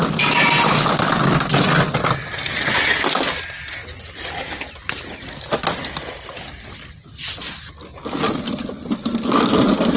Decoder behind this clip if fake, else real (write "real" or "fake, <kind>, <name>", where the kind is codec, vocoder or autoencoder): real